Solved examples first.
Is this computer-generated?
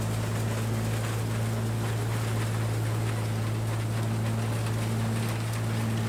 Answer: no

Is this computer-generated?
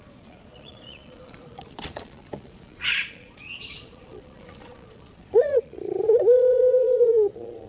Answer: yes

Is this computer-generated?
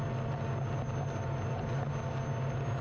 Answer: no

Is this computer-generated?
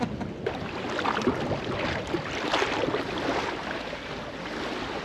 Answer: no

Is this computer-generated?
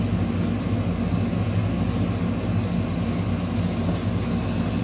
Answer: no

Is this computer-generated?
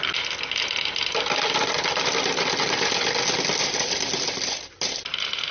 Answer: no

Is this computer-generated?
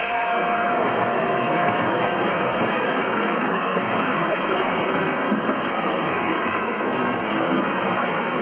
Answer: yes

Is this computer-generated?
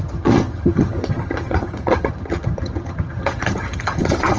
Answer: yes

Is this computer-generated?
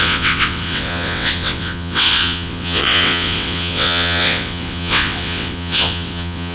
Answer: yes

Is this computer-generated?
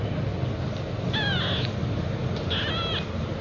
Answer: no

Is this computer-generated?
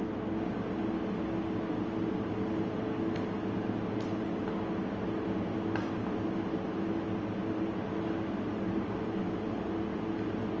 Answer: no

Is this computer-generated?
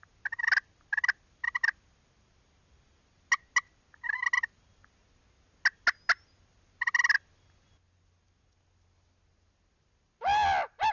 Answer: no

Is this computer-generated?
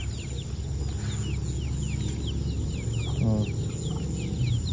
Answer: no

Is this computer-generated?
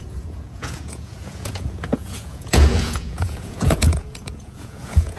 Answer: yes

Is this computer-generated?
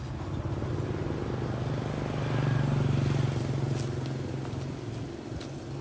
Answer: no